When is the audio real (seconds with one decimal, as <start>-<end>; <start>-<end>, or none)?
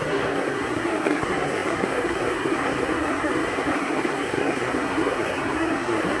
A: none